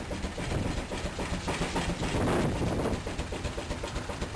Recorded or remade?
recorded